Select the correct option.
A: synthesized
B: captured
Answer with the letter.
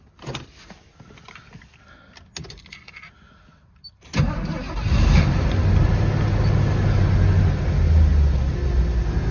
B